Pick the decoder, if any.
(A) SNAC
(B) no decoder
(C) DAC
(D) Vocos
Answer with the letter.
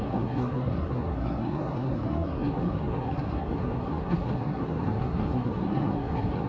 A